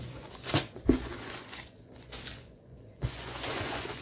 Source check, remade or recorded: remade